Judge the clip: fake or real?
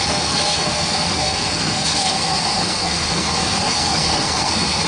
fake